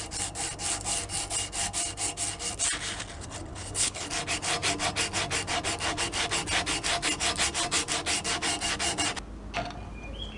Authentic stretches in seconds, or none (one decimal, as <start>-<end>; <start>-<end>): 0.0-3.5; 4.1-10.4